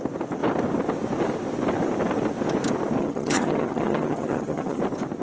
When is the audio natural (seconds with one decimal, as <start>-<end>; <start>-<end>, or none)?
0.0-3.0; 4.8-5.2